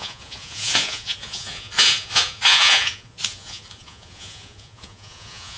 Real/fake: fake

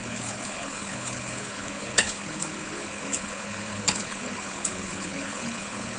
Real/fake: fake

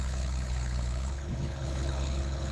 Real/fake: fake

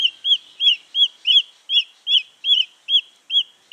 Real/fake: real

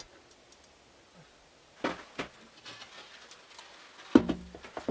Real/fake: real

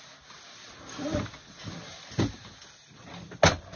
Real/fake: real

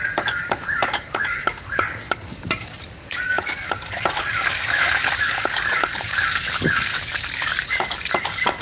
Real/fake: fake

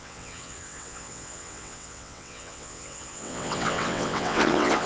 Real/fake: fake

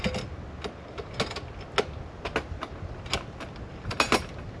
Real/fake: real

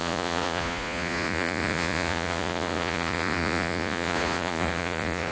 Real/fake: fake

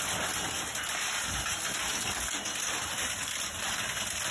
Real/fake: fake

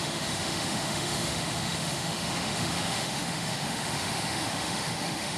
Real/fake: fake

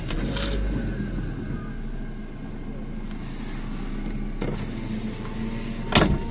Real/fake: real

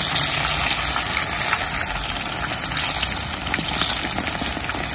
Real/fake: real